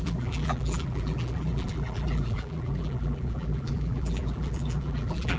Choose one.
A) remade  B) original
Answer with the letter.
A